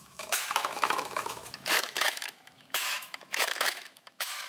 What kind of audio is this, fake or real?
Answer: fake